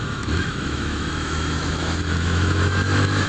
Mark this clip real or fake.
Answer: fake